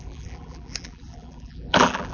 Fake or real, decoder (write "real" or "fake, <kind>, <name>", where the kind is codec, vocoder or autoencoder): fake, vocoder, BigVGAN v2